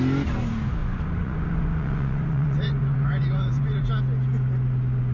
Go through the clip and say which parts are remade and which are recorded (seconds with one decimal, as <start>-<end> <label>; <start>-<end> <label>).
0.0-0.8 recorded; 0.8-3.9 remade; 3.9-5.1 recorded